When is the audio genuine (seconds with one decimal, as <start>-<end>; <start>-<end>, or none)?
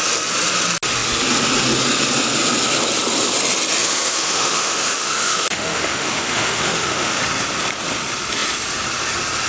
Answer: 0.0-3.8; 7.2-9.5